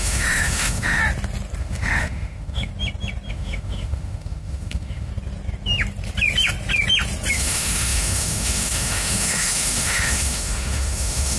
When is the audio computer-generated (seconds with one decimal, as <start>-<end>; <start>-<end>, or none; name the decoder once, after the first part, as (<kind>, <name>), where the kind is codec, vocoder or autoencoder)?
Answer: 0.0-1.0 (autoencoder, DAC-VAE); 1.6-2.7; 3.3-5.1; 7.3-11.4